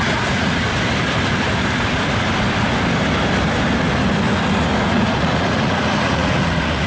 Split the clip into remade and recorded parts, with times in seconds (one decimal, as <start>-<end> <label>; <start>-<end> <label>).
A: 0.0-0.7 remade; 0.7-4.8 recorded; 4.8-6.9 remade